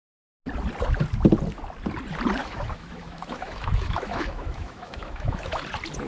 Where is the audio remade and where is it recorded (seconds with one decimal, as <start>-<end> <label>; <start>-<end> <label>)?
0.0-2.4 recorded; 2.4-5.6 remade; 5.6-6.1 recorded